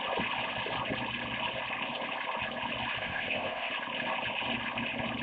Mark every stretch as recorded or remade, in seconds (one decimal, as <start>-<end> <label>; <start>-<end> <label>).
0.0-3.0 recorded; 3.0-3.7 remade; 3.7-5.2 recorded